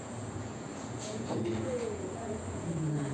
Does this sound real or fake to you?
fake